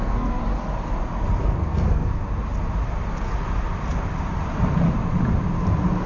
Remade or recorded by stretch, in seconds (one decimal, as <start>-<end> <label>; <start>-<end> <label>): 0.0-0.4 remade; 0.4-1.4 recorded; 1.4-2.2 remade; 2.2-6.1 recorded